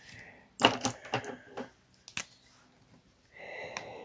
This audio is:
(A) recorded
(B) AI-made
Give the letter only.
A